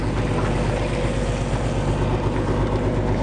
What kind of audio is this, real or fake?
real